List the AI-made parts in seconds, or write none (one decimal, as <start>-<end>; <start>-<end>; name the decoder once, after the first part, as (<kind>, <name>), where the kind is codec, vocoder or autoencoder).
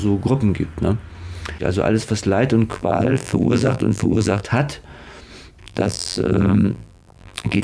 2.7-4.4 (vocoder, BigVGAN v2); 5.6-7.6